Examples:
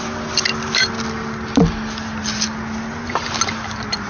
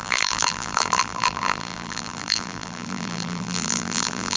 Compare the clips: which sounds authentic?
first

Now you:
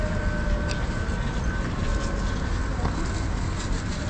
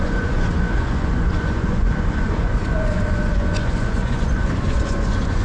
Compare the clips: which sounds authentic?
first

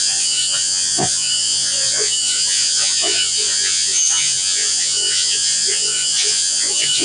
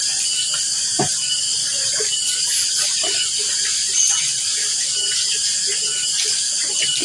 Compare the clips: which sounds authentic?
second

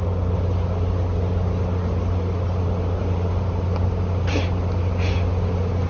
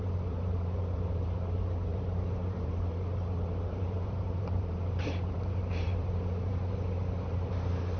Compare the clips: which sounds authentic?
first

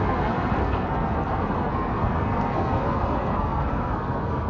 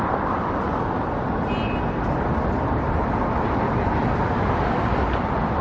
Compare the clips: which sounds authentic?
second